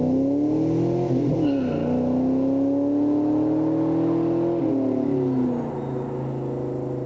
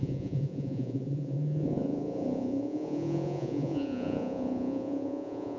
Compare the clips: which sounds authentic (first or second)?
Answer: first